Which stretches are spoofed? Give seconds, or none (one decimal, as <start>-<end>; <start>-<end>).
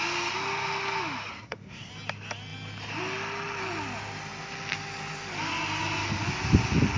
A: 1.3-1.9